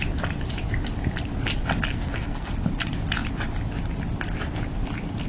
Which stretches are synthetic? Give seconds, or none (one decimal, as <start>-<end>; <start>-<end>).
1.9-2.5